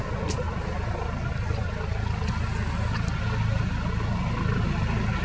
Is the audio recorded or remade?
recorded